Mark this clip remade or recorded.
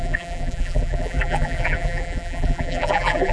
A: remade